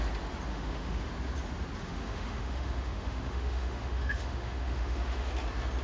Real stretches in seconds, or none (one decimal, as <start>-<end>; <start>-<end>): 0.0-0.5; 1.0-1.8; 5.3-5.8

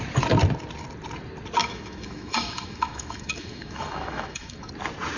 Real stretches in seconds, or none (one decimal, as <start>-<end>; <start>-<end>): 0.0-1.6; 4.7-5.2